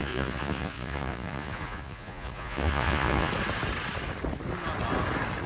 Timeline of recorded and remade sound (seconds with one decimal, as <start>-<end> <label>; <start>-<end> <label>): 0.0-3.3 remade; 3.3-5.5 recorded